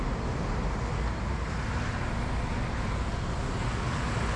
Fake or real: real